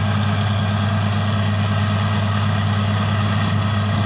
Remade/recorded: recorded